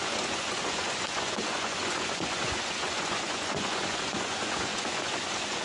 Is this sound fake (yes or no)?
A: yes